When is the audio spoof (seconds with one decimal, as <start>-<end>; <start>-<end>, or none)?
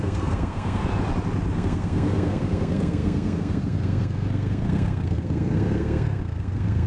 0.0-0.8; 1.5-6.9